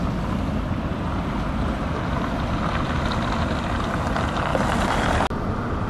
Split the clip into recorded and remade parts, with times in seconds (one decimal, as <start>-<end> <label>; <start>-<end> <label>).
0.0-5.9 recorded